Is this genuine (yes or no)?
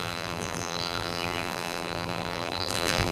no